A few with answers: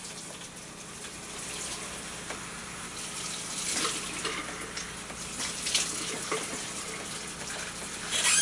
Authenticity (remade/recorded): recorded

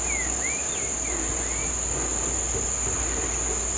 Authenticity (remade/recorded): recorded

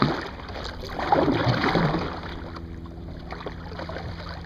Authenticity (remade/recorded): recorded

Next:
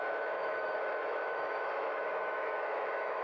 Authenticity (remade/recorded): remade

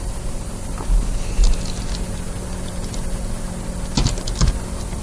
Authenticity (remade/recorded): recorded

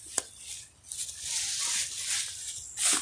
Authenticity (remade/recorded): recorded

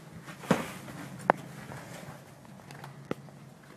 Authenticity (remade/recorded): recorded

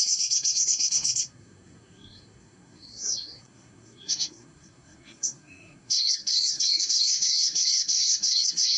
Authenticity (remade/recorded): remade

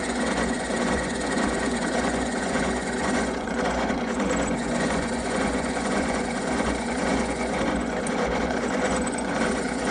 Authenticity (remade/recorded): remade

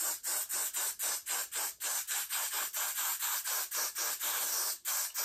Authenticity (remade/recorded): recorded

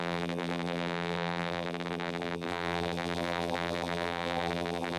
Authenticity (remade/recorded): remade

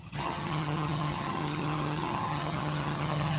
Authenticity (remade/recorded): remade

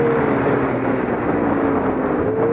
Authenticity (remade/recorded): recorded